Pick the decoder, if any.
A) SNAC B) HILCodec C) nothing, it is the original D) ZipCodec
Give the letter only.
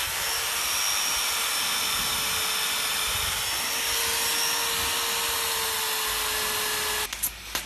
C